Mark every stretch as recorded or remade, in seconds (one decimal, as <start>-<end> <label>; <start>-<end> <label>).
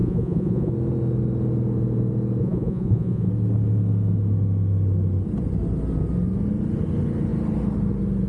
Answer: 0.0-0.7 remade; 0.7-2.4 recorded; 2.4-3.3 remade; 3.3-8.3 recorded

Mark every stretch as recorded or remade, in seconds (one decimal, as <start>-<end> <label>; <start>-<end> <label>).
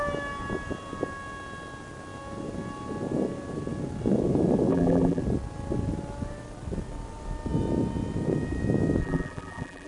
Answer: 0.0-4.7 recorded; 4.7-5.2 remade; 5.2-9.0 recorded; 9.0-9.9 remade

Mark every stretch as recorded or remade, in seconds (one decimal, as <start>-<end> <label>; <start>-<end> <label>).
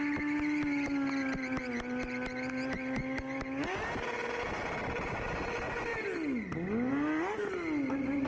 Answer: 0.0-8.3 recorded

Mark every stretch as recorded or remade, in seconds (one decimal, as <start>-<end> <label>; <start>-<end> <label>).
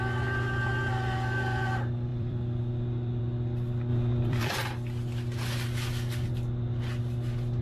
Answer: 0.0-2.1 recorded; 2.1-3.2 remade; 3.2-3.9 recorded; 3.9-4.5 remade; 4.5-7.6 recorded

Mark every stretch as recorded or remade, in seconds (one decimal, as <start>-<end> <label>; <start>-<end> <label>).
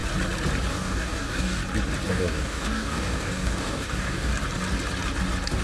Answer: 0.0-0.7 recorded; 0.7-1.6 remade; 1.6-2.1 recorded; 2.1-4.3 remade; 4.3-5.6 recorded